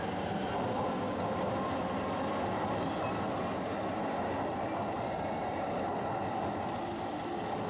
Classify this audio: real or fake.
real